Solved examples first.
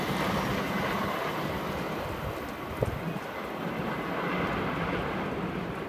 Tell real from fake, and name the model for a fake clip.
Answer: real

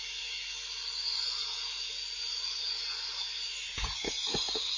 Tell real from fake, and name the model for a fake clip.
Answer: real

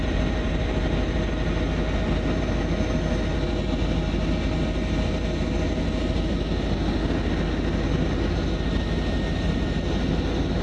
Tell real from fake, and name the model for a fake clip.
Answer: real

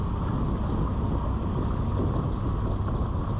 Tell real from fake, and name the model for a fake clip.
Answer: real